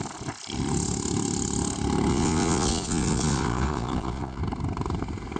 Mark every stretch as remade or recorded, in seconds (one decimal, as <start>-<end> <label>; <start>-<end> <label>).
0.0-2.1 recorded; 2.1-4.4 remade; 4.4-5.4 recorded